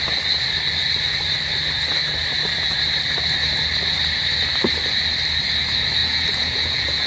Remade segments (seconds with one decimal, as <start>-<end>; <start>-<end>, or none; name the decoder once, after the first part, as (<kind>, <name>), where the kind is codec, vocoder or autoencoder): 6.0-7.1 (vocoder, Vocos)